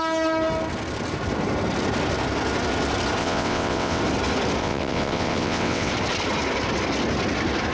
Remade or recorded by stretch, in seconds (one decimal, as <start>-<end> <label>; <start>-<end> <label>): 0.0-3.2 recorded; 3.2-4.0 remade; 4.0-4.6 recorded; 4.6-5.9 remade; 5.9-7.7 recorded